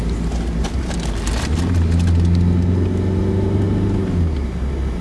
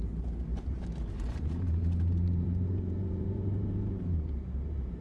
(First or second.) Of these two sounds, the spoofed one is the second